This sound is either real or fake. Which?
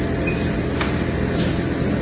real